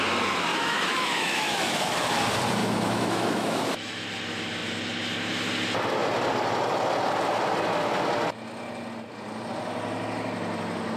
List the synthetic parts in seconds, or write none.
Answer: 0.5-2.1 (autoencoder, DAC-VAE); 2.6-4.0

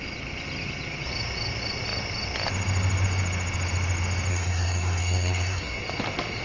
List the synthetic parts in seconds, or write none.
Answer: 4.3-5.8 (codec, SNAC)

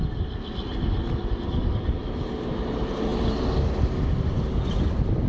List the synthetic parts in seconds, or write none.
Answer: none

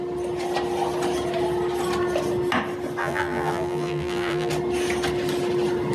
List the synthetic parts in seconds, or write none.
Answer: 3.0-4.5 (vocoder, BigVGAN v2)